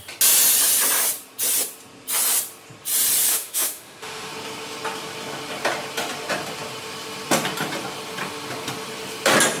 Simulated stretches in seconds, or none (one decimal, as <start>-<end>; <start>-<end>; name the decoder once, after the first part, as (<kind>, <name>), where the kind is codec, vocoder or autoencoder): 3.3-4.3 (autoencoder, DAC-VAE)